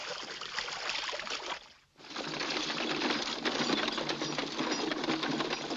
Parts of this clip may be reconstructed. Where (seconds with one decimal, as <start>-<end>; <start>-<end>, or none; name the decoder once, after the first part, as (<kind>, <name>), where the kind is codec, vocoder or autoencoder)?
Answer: none